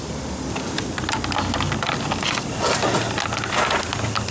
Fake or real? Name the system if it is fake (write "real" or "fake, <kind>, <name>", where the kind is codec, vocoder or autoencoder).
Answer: real